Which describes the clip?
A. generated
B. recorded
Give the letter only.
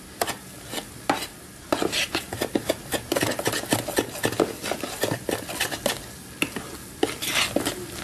B